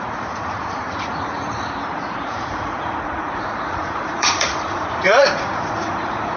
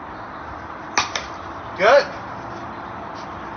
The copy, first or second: first